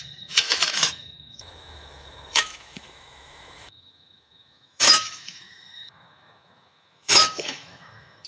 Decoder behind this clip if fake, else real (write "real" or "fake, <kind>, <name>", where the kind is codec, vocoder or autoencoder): fake, autoencoder, DAC-VAE